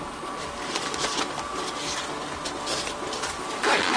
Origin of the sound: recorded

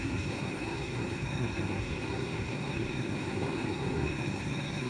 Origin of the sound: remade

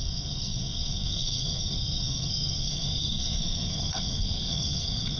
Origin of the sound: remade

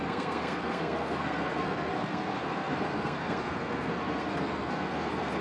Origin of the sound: remade